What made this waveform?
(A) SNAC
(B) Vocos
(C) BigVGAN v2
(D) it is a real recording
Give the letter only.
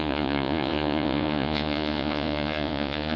B